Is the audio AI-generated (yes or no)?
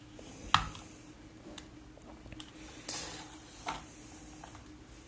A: no